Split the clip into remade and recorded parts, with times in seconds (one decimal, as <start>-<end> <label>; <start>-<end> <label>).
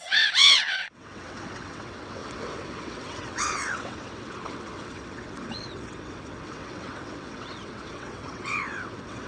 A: 0.0-9.3 remade